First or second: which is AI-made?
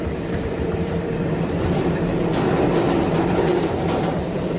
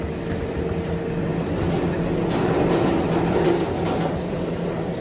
first